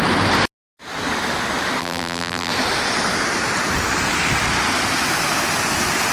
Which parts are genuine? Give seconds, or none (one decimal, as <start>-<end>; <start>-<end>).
0.0-1.8; 2.5-6.1